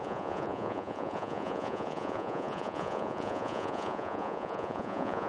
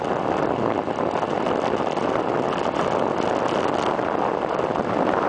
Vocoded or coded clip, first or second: first